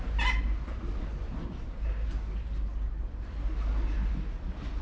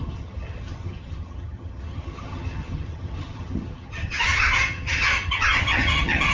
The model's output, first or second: second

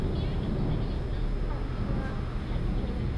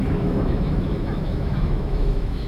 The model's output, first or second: second